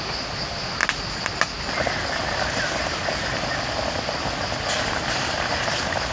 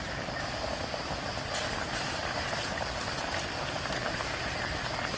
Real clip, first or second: first